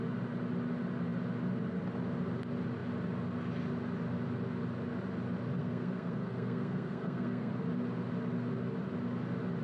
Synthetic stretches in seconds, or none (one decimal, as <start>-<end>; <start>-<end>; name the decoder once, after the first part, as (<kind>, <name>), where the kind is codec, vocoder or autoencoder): 5.6-7.5 (codec, SNAC)